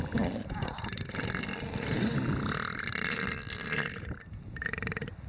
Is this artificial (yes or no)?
no